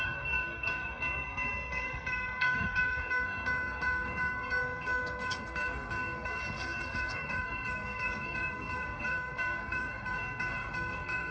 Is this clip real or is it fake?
fake